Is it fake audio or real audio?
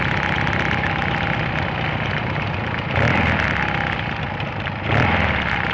real